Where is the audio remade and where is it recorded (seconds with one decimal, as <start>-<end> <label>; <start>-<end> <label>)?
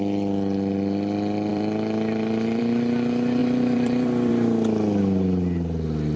0.0-1.5 recorded; 1.5-2.6 remade; 2.6-3.4 recorded; 3.4-4.3 remade; 4.3-6.2 recorded